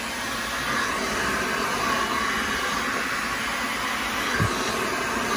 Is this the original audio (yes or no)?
yes